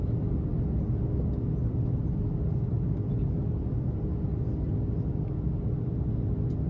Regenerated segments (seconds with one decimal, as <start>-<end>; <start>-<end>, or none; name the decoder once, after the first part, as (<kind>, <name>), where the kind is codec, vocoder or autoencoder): none